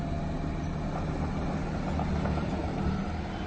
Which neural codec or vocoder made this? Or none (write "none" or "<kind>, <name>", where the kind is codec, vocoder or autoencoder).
vocoder, BigVGAN v2